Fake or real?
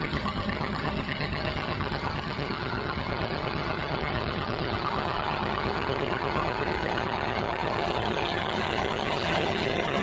fake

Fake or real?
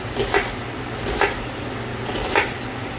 real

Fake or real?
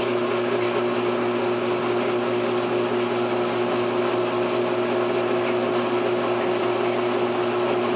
real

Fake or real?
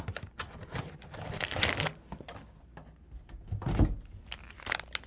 real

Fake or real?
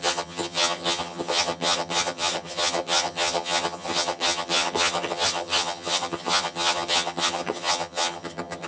fake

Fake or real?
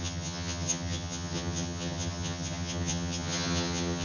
fake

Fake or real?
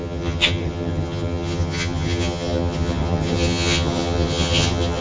fake